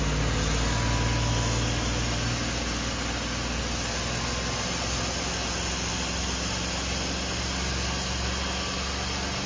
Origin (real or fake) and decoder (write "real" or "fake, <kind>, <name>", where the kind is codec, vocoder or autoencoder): real